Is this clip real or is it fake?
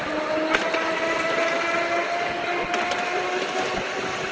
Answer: real